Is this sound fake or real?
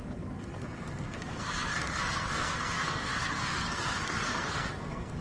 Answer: fake